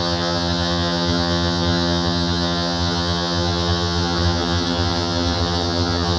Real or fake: fake